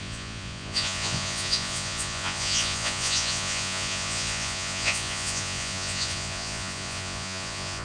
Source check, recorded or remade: remade